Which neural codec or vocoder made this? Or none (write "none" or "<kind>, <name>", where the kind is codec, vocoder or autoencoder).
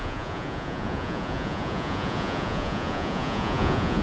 vocoder, Vocos